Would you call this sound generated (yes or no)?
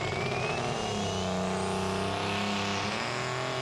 no